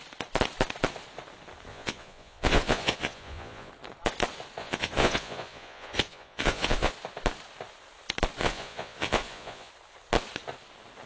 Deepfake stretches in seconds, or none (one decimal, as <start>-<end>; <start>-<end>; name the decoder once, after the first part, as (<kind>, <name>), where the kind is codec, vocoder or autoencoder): 1.7-3.7 (vocoder, Vocos); 4.6-6.9; 8.4-9.7